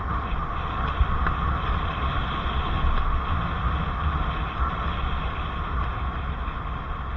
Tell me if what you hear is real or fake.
real